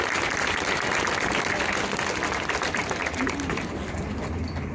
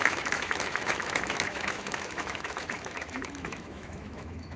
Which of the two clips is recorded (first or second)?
first